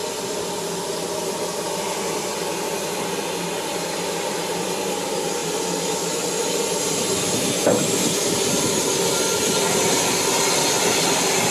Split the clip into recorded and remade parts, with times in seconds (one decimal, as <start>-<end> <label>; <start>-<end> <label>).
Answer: 0.0-11.5 recorded